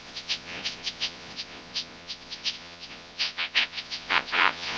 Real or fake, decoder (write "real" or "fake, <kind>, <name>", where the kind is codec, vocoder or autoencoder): fake, vocoder, Vocos